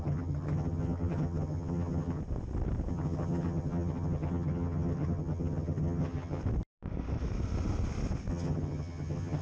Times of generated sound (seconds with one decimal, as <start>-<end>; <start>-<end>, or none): 0.0-2.2; 2.9-6.4; 8.3-9.4